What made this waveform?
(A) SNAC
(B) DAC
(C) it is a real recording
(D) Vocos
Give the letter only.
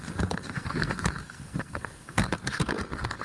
A